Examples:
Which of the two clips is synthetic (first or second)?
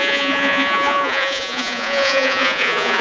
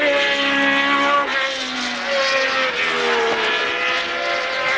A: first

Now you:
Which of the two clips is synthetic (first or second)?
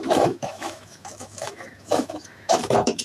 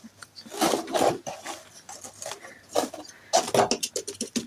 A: first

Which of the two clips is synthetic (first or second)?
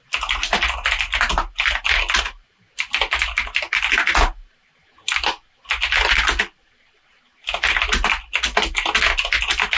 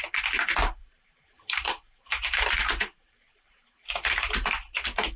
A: second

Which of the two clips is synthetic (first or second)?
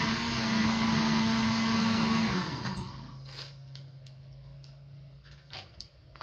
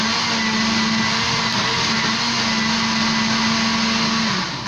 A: first